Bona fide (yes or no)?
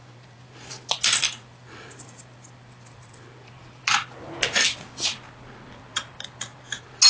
yes